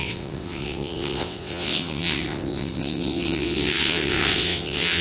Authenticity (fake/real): fake